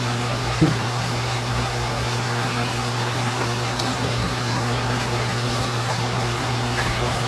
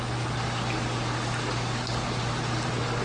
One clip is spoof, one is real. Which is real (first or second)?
second